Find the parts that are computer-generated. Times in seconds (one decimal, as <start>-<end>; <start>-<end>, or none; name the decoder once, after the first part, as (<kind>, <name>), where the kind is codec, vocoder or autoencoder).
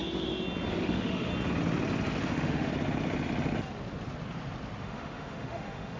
0.8-1.3 (autoencoder, DAC-VAE); 2.3-2.7; 4.8-6.0